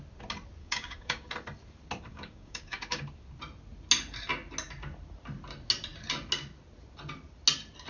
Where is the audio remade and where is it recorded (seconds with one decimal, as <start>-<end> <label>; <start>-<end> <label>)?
0.0-0.6 recorded; 0.6-1.3 remade; 1.3-2.1 recorded; 2.1-3.0 remade; 3.0-7.9 recorded